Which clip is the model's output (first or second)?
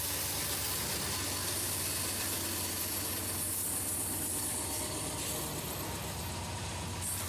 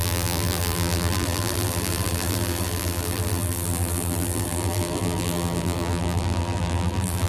second